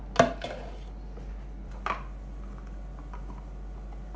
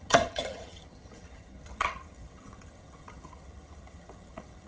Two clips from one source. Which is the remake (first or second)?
second